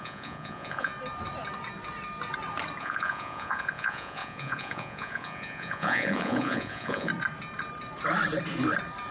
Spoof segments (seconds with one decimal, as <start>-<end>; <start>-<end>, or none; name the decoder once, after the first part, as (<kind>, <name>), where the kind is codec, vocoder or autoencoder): 0.0-0.9 (vocoder, Vocos); 2.8-7.1